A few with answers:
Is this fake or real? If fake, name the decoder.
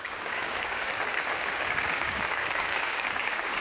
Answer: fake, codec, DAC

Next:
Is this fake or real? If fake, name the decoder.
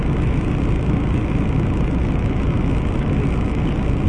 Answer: real